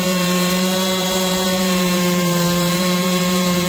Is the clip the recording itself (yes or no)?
no